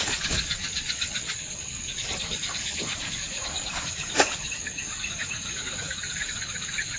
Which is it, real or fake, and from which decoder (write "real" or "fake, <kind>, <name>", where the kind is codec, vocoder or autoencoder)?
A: fake, codec, DAC